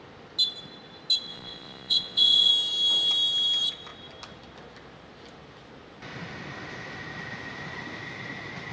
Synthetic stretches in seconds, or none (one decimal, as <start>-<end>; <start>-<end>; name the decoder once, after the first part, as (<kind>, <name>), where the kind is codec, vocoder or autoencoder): 1.3-2.5 (vocoder, Vocos)